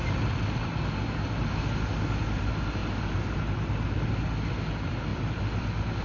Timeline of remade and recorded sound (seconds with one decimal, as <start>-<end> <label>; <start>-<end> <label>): 0.0-0.7 remade; 0.7-2.8 recorded; 2.8-4.1 remade; 4.1-5.1 recorded; 5.1-6.0 remade